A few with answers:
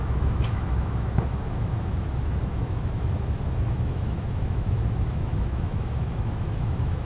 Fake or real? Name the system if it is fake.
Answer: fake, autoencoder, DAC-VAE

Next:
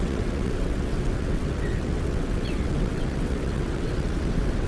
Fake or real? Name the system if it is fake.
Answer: fake, vocoder, WaveNeXt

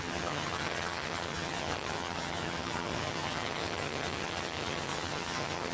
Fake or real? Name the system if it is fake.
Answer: fake, vocoder, HiFi-GAN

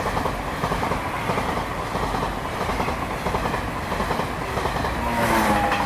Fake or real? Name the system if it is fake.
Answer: real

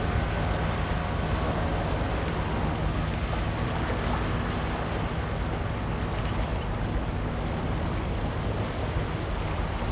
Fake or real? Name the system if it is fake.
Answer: real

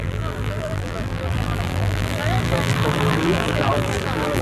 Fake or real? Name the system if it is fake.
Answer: fake, vocoder, BigVGAN v2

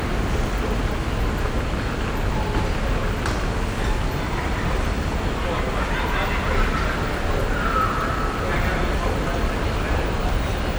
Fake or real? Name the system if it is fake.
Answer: real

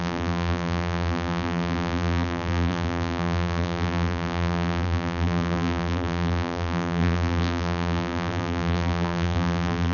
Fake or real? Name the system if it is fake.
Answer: fake, vocoder, BigVGAN v2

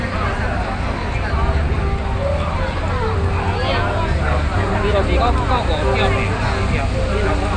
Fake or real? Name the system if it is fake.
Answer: real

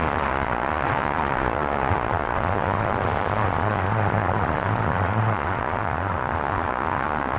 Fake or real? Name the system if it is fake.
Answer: fake, vocoder, Vocos